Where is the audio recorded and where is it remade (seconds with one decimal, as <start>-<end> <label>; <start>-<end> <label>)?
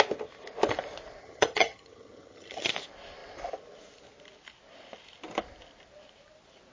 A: 0.0-1.2 recorded; 1.2-2.7 remade; 2.7-6.7 recorded